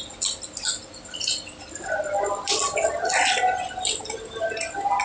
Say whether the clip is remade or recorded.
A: recorded